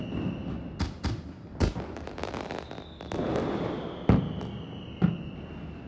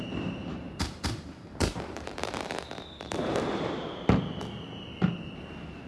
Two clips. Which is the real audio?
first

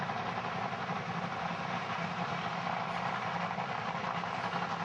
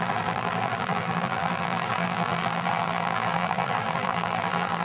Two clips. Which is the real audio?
first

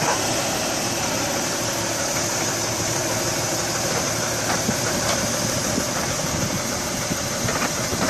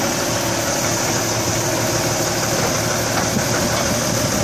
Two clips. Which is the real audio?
second